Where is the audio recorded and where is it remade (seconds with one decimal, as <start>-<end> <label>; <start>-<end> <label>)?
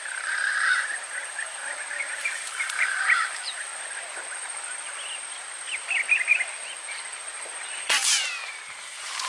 0.0-1.6 remade; 1.6-2.1 recorded; 2.1-3.7 remade; 3.7-7.8 recorded; 7.8-9.3 remade